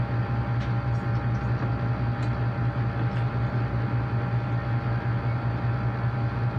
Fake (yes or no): no